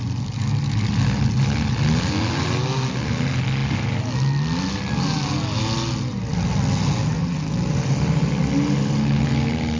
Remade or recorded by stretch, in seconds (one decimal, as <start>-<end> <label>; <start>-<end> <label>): 0.0-9.8 recorded

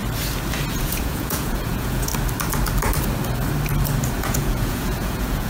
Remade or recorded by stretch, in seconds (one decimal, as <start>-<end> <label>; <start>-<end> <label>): 0.0-0.7 recorded; 0.7-2.1 remade; 2.1-4.2 recorded; 4.2-5.5 remade